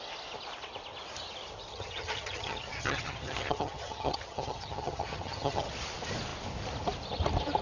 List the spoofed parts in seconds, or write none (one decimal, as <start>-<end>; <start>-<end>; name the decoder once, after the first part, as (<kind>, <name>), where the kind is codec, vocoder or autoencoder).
1.7-5.7 (vocoder, HiFi-GAN)